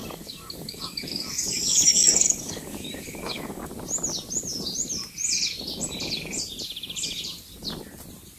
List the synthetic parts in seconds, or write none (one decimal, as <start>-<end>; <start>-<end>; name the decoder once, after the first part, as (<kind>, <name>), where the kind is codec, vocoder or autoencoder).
0.0-3.7 (codec, DAC)